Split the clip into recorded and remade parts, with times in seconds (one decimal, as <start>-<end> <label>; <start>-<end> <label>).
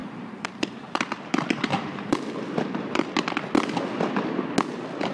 0.0-3.1 remade; 3.1-5.1 recorded